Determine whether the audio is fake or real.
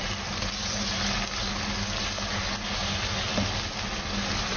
real